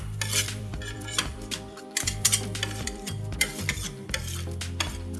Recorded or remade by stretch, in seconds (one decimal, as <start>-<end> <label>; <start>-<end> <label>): 0.0-0.4 recorded; 0.4-3.5 remade; 3.5-5.2 recorded